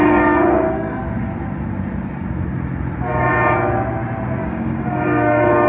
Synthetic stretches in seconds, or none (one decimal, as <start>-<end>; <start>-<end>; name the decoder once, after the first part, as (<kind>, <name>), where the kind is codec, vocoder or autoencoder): 0.0-1.0 (codec, DAC); 4.4-5.7